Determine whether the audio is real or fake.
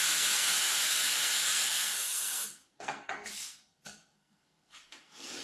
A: fake